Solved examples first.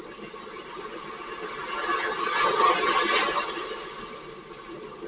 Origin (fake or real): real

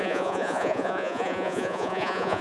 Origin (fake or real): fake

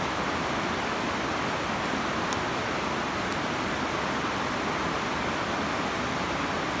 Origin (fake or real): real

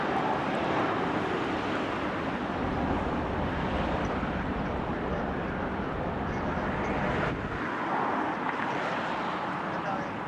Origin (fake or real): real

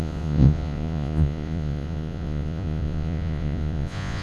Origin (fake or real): fake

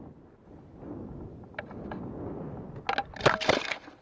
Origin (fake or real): real